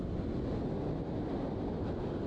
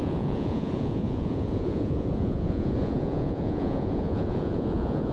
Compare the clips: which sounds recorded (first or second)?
first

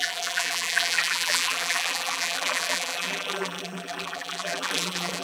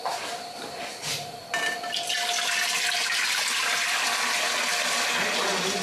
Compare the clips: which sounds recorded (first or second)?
second